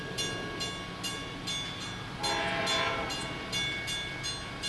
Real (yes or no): yes